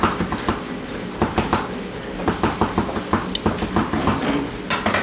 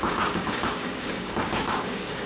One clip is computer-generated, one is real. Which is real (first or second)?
first